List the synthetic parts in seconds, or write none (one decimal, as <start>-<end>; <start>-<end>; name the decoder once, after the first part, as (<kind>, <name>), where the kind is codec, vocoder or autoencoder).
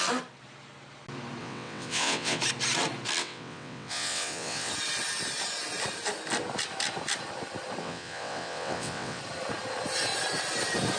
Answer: 1.4-2.4 (vocoder, WaveNeXt); 3.2-4.7; 7.8-9.2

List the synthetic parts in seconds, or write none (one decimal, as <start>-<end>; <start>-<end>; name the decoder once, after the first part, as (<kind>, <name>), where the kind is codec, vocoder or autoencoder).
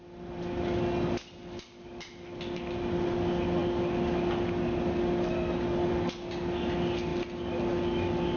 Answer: none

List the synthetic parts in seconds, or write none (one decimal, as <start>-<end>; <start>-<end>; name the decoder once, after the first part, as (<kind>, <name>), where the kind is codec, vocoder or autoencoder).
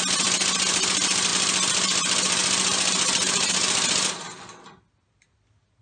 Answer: none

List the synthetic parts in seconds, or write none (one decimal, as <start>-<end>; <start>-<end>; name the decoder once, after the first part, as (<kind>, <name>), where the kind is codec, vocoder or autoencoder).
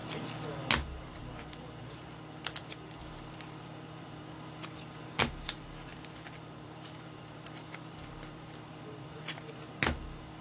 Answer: 1.1-1.8 (vocoder, BigVGAN v2); 3.0-5.2; 5.9-9.5